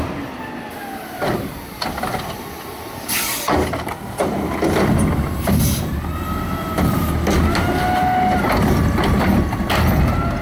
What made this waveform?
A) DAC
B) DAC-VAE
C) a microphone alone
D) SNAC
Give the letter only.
C